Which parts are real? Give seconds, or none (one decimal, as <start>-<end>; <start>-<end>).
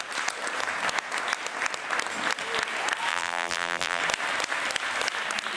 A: 0.0-3.1; 4.0-5.6